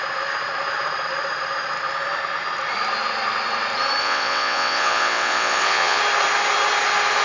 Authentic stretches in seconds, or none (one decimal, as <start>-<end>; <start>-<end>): 0.0-4.0; 6.0-7.2